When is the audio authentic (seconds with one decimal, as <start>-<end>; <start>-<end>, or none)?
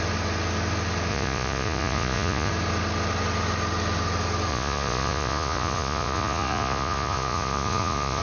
0.0-1.1; 2.5-4.5